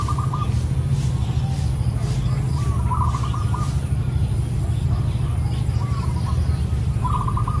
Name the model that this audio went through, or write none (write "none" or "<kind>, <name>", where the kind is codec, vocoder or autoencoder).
none